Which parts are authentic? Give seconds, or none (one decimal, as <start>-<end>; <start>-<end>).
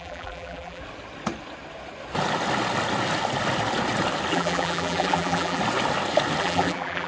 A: 0.8-4.3; 5.6-6.4